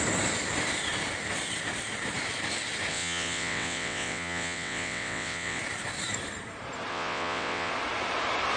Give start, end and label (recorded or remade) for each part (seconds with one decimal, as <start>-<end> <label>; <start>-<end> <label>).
0.0-2.9 recorded; 2.9-5.6 remade; 5.6-6.9 recorded; 6.9-7.7 remade; 7.7-8.6 recorded